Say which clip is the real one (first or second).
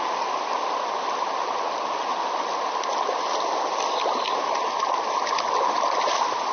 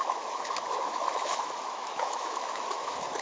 first